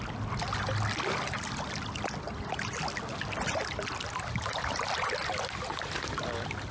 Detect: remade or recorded recorded